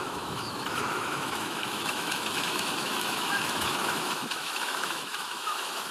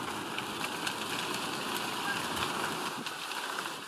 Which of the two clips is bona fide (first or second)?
second